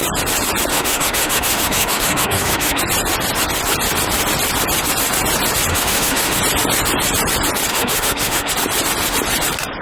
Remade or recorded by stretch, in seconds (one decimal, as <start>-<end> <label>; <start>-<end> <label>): 0.0-0.7 recorded; 0.7-2.8 remade; 2.8-5.7 recorded; 5.7-6.4 remade; 6.4-7.7 recorded; 7.7-8.5 remade; 8.5-9.8 recorded